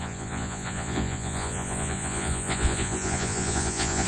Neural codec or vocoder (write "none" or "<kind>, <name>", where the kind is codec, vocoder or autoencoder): vocoder, Vocos